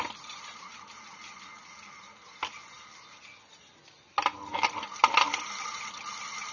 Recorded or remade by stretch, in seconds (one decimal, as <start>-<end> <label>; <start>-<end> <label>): 0.0-6.5 recorded